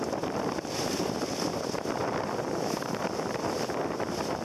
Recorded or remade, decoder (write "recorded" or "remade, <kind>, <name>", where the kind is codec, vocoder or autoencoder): recorded